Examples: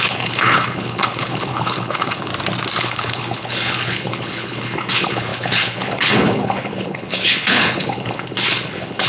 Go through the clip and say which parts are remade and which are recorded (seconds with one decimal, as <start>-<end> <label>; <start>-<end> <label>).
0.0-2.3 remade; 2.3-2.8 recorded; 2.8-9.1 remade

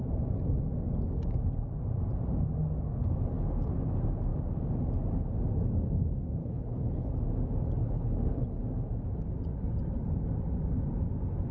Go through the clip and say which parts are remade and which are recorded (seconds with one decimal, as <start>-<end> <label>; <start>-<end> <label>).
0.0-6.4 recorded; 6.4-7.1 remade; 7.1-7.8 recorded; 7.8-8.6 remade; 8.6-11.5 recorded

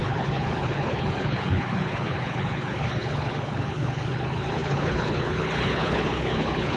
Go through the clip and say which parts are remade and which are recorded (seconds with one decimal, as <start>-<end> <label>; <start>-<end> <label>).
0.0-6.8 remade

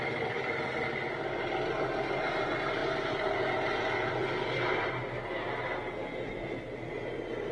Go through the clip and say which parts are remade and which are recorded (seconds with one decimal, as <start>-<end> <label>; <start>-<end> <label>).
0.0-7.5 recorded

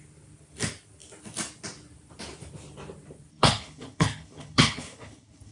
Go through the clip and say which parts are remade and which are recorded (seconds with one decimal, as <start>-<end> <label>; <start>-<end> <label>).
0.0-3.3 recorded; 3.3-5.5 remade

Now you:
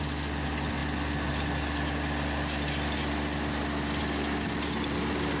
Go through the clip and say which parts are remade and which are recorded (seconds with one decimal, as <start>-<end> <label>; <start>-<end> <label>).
0.0-5.4 recorded